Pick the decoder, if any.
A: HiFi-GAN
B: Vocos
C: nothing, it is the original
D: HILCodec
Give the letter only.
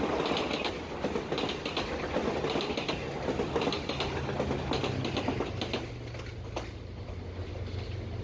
C